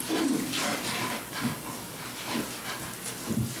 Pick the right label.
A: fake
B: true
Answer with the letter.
B